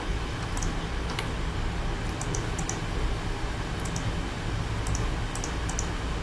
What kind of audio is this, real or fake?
real